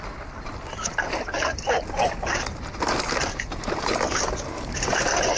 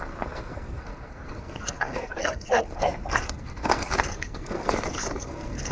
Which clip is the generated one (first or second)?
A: second